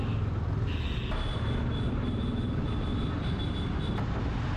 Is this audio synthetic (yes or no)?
no